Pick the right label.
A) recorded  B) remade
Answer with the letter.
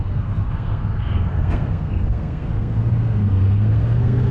B